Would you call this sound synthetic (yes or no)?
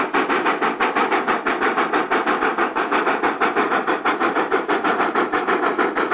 no